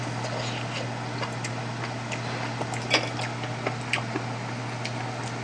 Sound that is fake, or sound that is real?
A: real